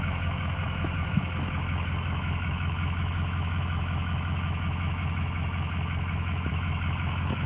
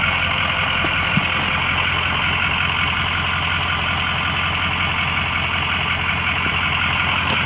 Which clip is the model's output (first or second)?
first